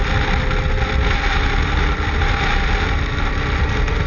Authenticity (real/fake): real